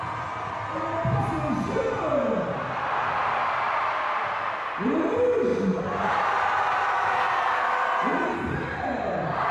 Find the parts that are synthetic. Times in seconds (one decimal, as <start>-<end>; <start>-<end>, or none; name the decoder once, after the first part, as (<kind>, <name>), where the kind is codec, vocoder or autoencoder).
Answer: 5.5-7.1 (vocoder, BigVGAN v2)